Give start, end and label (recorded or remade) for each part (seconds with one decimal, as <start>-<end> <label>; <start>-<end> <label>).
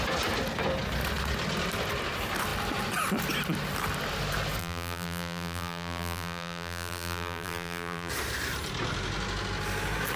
0.0-4.6 recorded; 4.6-8.1 remade; 8.1-10.2 recorded